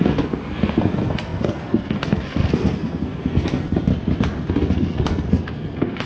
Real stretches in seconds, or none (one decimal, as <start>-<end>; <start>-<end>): 3.9-4.5